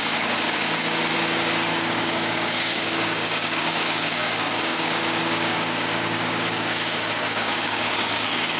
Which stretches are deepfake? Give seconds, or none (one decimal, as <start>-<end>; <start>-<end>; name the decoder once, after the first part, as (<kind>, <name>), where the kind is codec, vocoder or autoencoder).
0.0-1.1 (codec, DAC); 1.7-8.6